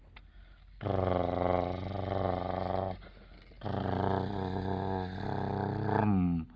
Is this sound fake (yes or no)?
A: no